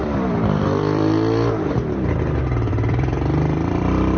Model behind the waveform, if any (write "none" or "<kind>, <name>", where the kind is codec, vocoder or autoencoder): vocoder, BigVGAN v2